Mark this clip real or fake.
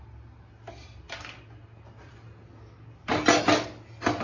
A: real